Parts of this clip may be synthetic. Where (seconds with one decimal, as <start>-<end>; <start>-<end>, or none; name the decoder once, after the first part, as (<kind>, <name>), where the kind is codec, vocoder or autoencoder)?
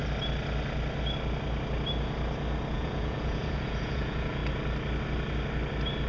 2.7-4.4 (vocoder, Vocos)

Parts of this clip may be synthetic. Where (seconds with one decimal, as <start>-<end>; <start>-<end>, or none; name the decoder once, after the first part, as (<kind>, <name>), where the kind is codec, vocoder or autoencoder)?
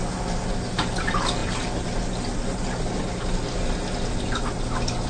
none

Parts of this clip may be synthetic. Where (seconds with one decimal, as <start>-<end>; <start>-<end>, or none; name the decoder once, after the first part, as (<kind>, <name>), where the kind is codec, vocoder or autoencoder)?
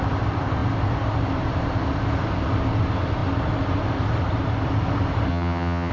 5.3-5.9 (vocoder, HiFi-GAN)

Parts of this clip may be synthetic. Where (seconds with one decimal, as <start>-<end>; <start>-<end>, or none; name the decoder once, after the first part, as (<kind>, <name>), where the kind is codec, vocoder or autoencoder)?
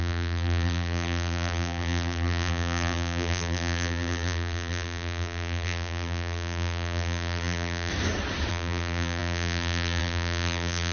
0.0-7.9 (vocoder, BigVGAN v2); 8.5-10.9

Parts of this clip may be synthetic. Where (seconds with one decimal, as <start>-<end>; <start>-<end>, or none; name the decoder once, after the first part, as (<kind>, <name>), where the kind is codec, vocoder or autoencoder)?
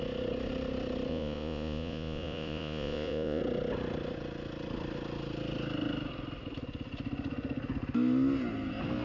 1.1-3.4 (vocoder, Vocos)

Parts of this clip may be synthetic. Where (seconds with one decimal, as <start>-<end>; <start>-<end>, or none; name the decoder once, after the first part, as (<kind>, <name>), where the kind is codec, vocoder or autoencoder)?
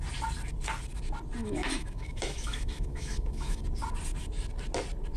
1.4-3.6 (autoencoder, DAC-VAE)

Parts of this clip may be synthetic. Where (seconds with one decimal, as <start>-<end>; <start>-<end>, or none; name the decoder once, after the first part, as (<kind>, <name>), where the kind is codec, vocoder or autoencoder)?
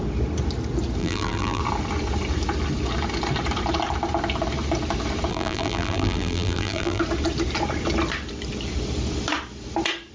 1.0-1.6 (vocoder, BigVGAN v2); 5.3-7.0